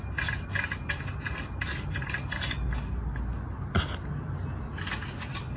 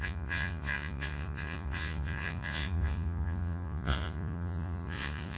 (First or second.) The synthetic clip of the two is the second